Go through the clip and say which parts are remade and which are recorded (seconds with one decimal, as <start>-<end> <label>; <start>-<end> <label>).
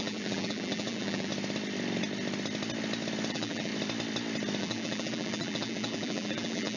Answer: 0.0-1.3 remade; 1.3-3.3 recorded; 3.3-3.7 remade; 3.7-4.6 recorded; 4.6-6.8 remade